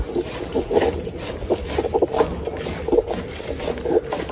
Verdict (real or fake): real